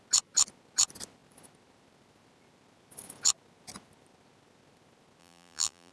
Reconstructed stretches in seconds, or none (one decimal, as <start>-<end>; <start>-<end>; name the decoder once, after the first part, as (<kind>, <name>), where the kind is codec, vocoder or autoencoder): 5.2-5.9 (vocoder, BigVGAN v2)